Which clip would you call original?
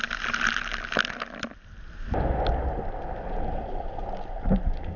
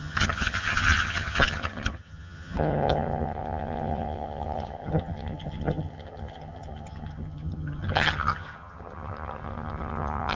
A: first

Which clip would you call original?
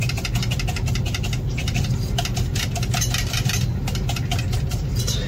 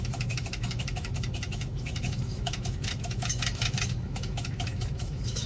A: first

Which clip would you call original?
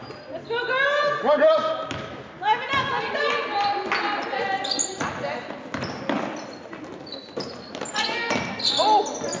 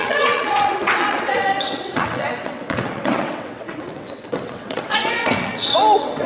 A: first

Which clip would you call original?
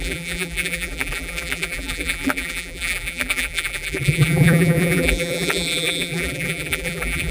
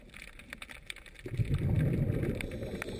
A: second